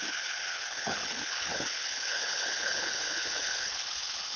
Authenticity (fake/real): fake